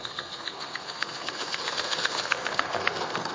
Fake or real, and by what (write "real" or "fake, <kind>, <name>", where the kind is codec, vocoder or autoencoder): fake, codec, SNAC